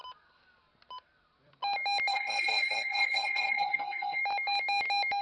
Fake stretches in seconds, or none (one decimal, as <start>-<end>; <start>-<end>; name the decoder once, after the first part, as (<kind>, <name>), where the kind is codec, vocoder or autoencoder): 2.1-4.2 (codec, SNAC)